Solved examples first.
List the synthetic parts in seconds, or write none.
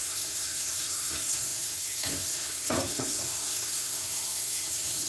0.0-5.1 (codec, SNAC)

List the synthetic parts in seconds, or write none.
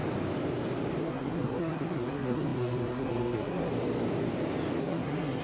1.0-3.7 (codec, SNAC); 4.8-5.4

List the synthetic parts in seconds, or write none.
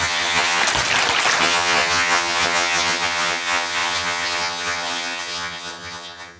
0.0-0.6 (vocoder, HiFi-GAN); 1.4-6.4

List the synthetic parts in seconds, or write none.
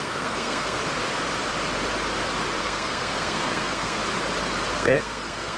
0.0-0.8 (codec, SNAC); 2.6-4.0; 4.7-5.6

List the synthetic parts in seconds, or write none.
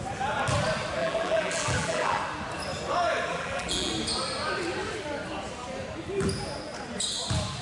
1.0-2.2 (vocoder, BigVGAN v2); 3.3-3.9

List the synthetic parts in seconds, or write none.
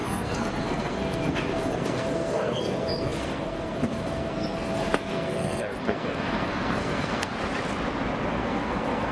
0.0-7.3 (codec, SNAC); 8.3-9.1